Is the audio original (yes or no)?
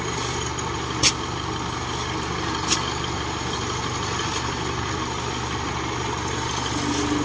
yes